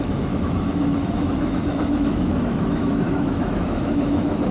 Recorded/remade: remade